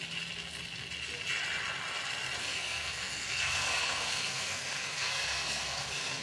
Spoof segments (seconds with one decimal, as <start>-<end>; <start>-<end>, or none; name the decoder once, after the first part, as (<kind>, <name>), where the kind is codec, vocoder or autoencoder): 2.4-6.2 (codec, SNAC)

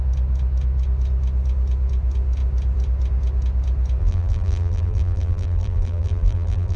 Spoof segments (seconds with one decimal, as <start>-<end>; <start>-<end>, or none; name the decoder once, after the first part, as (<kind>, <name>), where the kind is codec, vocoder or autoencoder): 4.0-6.8 (vocoder, BigVGAN v2)

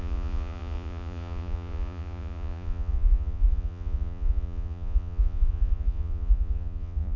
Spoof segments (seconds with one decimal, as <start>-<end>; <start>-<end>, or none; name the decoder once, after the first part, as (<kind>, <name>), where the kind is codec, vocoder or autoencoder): 0.0-7.2 (vocoder, Vocos)

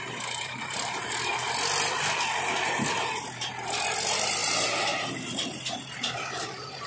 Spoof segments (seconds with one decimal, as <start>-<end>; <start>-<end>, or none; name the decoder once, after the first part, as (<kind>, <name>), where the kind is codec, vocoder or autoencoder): 0.0-1.3 (vocoder, BigVGAN v2); 2.5-6.9

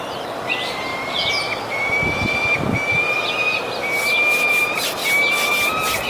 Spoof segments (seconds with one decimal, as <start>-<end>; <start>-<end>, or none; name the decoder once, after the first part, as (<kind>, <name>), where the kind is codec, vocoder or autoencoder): 0.9-4.6 (vocoder, BigVGAN v2)

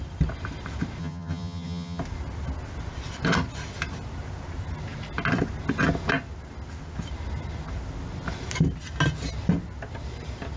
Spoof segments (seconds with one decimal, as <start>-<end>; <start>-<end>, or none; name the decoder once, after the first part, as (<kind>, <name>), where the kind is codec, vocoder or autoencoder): 1.0-2.0 (vocoder, HiFi-GAN)